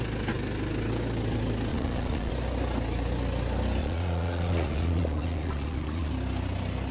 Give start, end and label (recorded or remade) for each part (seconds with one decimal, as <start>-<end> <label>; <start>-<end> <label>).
0.0-1.7 recorded; 1.7-2.3 remade; 2.3-3.8 recorded; 3.8-6.1 remade; 6.1-6.9 recorded